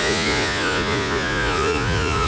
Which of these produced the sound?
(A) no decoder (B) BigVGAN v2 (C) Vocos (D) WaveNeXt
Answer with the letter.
C